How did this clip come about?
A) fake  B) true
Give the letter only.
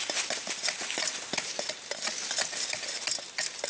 B